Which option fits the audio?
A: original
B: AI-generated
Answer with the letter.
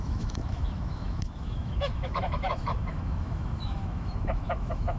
B